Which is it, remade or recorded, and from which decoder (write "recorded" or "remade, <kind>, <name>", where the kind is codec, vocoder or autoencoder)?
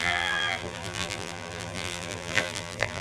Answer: remade, vocoder, BigVGAN v2